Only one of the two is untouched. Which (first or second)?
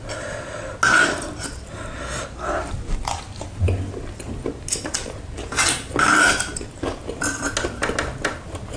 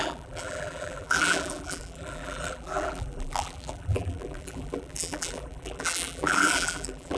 first